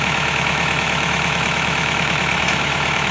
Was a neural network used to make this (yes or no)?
yes